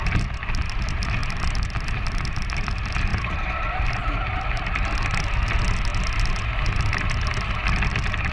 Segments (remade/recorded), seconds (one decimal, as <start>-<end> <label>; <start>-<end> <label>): 0.0-1.2 recorded; 1.2-2.0 remade; 2.0-8.3 recorded